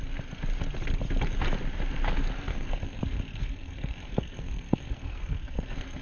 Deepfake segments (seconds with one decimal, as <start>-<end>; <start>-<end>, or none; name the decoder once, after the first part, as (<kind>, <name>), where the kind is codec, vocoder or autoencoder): 2.5-3.0 (codec, SNAC); 3.4-6.0